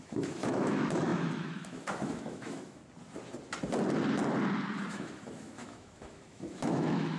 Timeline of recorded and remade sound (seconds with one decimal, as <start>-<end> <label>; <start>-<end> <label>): 0.0-2.8 remade; 2.8-4.9 recorded; 4.9-7.2 remade